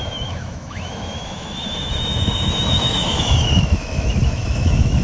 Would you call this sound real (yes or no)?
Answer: no